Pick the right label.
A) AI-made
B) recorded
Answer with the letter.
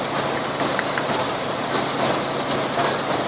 B